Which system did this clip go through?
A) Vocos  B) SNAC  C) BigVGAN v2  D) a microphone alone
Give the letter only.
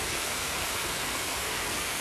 B